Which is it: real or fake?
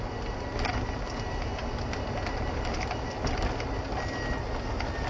real